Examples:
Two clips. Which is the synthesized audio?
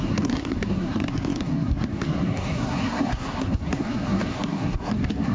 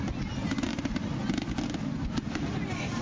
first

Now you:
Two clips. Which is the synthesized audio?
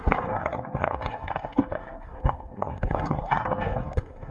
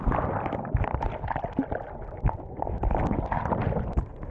first